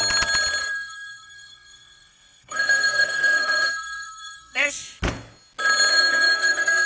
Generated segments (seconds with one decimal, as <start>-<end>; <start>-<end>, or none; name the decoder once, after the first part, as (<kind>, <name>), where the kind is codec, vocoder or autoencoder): 0.6-4.7 (codec, SNAC); 5.9-6.9